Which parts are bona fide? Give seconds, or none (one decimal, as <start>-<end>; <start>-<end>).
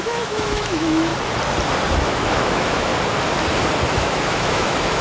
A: 1.1-2.0; 2.9-3.9